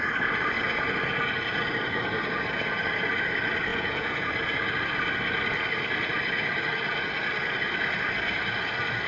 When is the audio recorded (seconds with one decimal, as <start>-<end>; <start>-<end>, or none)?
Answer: 0.0-3.7; 4.3-9.1